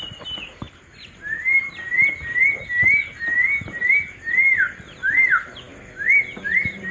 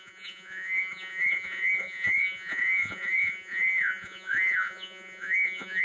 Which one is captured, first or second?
first